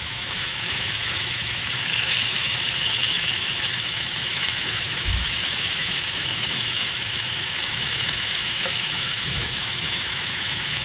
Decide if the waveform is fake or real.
fake